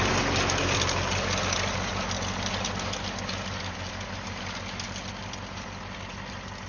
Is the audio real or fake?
real